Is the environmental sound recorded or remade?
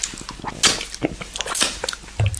recorded